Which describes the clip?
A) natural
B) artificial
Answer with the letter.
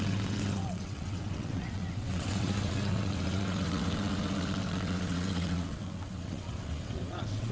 B